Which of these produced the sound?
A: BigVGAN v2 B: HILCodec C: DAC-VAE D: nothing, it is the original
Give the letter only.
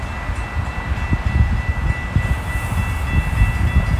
D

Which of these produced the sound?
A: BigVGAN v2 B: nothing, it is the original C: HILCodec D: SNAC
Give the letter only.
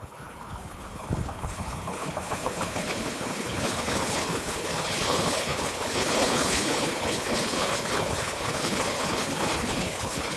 C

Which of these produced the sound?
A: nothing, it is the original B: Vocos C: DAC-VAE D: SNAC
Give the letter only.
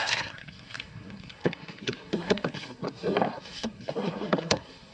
D